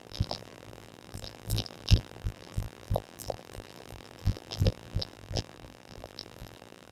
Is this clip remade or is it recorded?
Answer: remade